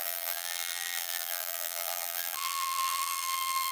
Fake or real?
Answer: fake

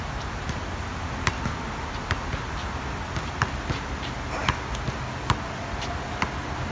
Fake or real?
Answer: real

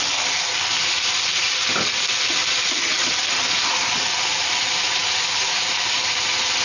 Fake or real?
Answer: real